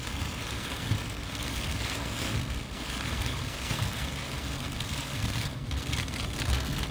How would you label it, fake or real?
fake